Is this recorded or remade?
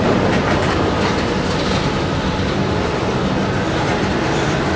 recorded